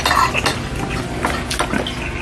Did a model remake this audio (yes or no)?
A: no